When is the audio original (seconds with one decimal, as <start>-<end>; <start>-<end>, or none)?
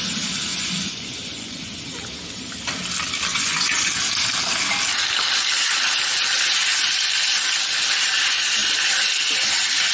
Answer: 0.0-0.5; 1.8-3.3; 3.9-9.9